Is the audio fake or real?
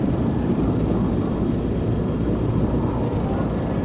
real